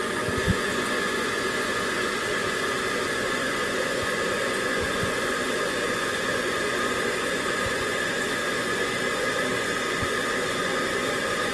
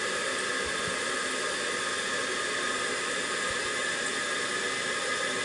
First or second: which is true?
second